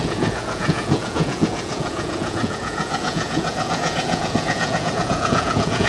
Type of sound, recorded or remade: remade